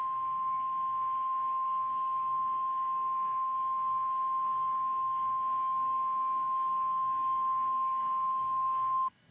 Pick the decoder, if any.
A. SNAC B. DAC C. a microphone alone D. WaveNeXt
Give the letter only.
B